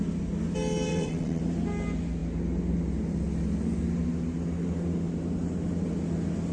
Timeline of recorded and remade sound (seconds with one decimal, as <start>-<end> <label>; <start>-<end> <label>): 0.0-0.9 recorded; 0.9-1.4 remade; 1.4-6.5 recorded